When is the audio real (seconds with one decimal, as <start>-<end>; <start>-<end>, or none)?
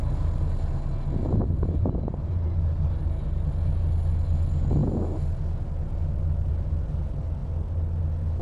0.0-2.3; 2.9-8.4